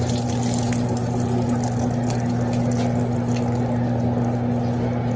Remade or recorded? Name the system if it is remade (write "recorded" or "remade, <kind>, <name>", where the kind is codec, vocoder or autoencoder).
recorded